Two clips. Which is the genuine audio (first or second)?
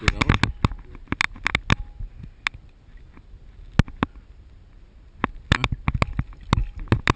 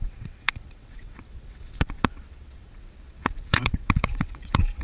first